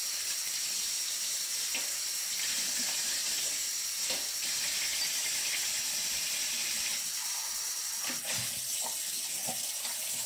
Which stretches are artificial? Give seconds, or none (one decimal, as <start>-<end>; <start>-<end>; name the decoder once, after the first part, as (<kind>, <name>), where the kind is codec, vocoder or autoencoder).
none

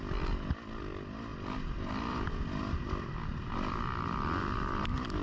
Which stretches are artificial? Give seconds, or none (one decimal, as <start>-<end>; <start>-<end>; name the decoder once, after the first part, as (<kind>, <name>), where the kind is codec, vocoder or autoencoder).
none